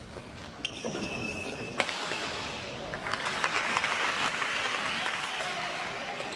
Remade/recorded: remade